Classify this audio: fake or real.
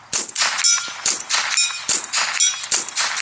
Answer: real